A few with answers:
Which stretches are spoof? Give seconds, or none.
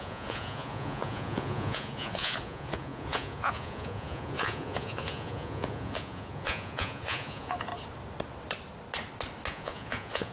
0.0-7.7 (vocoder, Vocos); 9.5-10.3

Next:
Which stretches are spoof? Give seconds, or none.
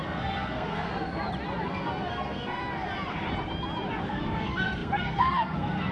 0.0-0.9 (codec, SNAC); 1.6-2.6; 4.0-5.9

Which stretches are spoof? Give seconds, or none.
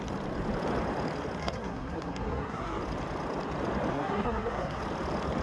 1.4-2.8 (codec, SNAC); 3.9-4.8